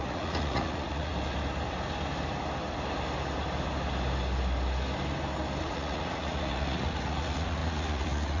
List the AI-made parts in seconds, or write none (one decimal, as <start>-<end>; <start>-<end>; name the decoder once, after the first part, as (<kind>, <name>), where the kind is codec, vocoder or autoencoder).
0.0-1.1 (vocoder, Vocos); 5.6-8.4

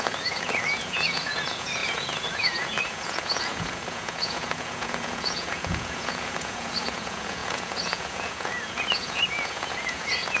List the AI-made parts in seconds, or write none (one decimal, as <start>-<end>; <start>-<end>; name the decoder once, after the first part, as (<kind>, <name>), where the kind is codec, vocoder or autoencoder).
0.0-10.4 (vocoder, Vocos)